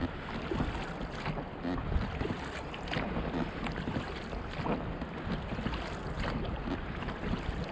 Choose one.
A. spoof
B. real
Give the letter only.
B